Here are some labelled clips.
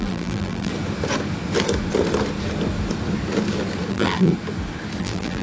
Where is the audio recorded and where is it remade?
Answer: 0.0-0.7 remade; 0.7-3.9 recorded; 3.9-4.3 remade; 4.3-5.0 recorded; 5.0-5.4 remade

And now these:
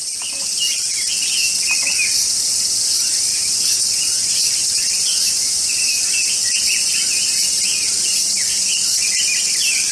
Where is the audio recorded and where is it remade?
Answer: 0.0-3.3 recorded; 3.3-5.9 remade; 5.9-6.4 recorded; 6.4-6.9 remade; 6.9-9.9 recorded

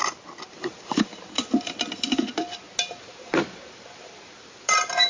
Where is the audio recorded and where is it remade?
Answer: 0.0-0.5 recorded; 0.5-1.4 remade; 1.4-3.0 recorded; 3.0-5.1 remade

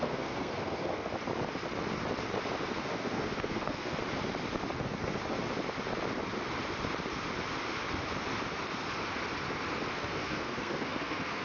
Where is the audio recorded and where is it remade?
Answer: 0.0-1.1 remade; 1.1-2.8 recorded; 2.8-4.0 remade; 4.0-4.8 recorded; 4.8-5.2 remade; 5.2-9.9 recorded; 9.9-11.4 remade

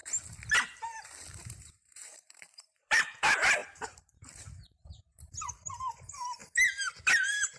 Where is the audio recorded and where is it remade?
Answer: 0.0-1.4 recorded; 1.4-6.4 remade; 6.4-7.0 recorded; 7.0-7.6 remade

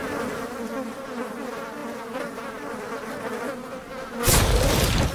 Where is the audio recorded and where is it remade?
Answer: 0.0-5.1 recorded

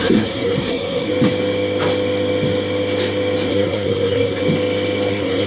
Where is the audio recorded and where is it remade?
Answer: 0.0-1.1 remade; 1.1-3.5 recorded; 3.5-4.4 remade; 4.4-5.1 recorded; 5.1-5.5 remade

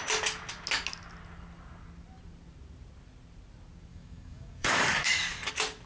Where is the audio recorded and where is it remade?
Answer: 0.0-3.9 recorded; 3.9-5.5 remade; 5.5-5.9 recorded